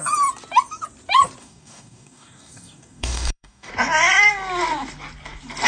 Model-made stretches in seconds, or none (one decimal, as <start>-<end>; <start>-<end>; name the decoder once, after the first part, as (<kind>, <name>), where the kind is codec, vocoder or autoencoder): 1.4-3.7 (codec, DAC)